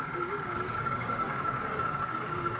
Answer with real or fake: fake